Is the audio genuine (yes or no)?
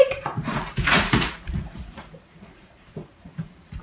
no